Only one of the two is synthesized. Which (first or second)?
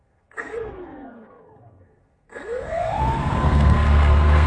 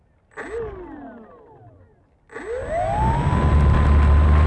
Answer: first